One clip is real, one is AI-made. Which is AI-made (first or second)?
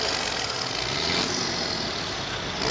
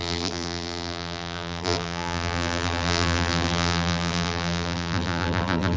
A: second